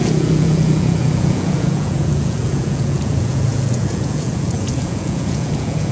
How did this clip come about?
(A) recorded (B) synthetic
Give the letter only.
B